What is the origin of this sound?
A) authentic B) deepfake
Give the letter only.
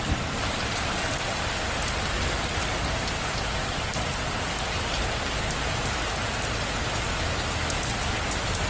A